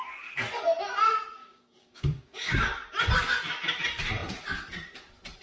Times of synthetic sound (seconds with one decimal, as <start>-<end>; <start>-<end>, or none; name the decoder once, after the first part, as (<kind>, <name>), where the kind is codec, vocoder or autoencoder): 1.4-2.6 (codec, DAC)